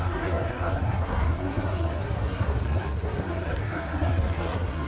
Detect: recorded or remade remade